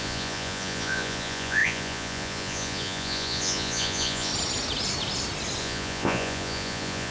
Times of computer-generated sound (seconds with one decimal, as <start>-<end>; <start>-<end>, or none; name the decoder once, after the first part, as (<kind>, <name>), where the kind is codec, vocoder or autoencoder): 0.0-4.3 (vocoder, Vocos); 5.6-7.1